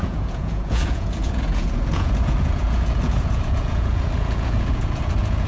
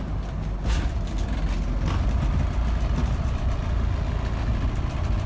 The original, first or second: second